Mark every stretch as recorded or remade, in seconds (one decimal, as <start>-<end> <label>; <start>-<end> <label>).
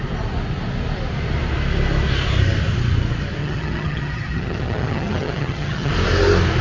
0.0-3.4 recorded; 3.4-5.9 remade; 5.9-6.6 recorded